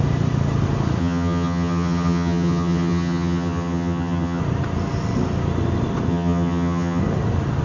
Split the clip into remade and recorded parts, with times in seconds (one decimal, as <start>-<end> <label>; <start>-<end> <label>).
0.0-1.0 recorded; 1.0-4.4 remade; 4.4-6.1 recorded; 6.1-7.0 remade; 7.0-7.6 recorded